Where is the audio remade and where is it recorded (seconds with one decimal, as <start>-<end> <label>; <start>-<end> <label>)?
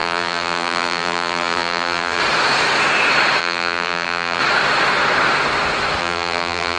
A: 0.0-2.2 remade; 2.2-3.4 recorded; 3.4-4.4 remade; 4.4-6.0 recorded; 6.0-6.8 remade